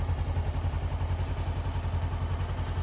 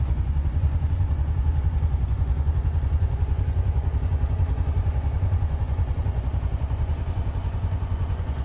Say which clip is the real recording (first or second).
first